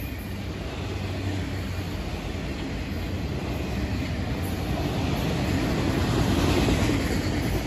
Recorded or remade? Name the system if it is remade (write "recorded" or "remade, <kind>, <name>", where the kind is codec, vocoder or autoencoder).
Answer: recorded